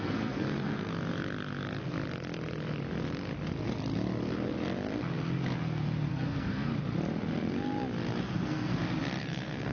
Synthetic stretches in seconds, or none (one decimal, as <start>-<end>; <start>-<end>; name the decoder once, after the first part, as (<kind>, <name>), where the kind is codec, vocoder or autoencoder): 0.0-0.9 (codec, SNAC); 6.1-6.7; 8.2-8.7; 9.2-9.7